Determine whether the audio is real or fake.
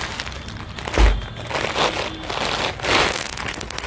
real